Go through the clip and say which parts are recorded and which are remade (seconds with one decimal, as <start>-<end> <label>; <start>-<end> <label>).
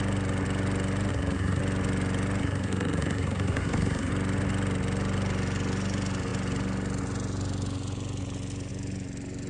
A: 0.0-1.1 recorded; 1.1-1.6 remade; 1.6-2.4 recorded; 2.4-4.1 remade; 4.1-9.5 recorded